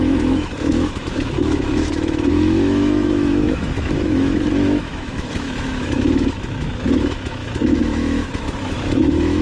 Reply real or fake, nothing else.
fake